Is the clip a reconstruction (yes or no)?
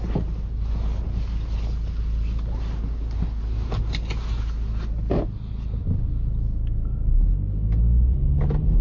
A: no